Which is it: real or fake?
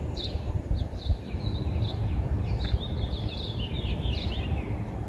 fake